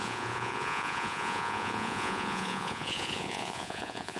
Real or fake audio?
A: fake